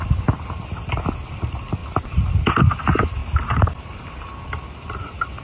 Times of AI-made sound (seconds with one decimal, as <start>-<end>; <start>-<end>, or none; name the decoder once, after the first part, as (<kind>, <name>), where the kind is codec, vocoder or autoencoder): 3.2-4.0 (vocoder, BigVGAN v2)